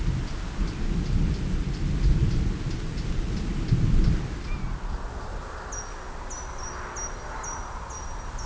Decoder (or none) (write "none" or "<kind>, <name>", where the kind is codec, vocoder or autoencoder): none